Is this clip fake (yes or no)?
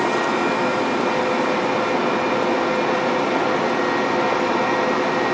no